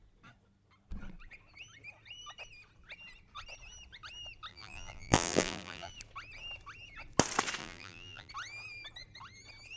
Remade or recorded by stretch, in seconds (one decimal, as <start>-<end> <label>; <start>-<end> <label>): 0.0-4.5 recorded; 4.5-5.9 remade; 5.9-7.6 recorded; 7.6-8.3 remade; 8.3-9.8 recorded